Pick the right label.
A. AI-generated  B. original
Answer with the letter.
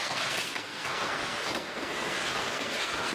A